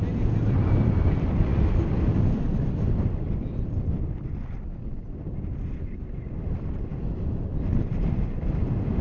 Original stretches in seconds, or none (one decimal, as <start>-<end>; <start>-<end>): 0.0-1.5; 5.7-9.0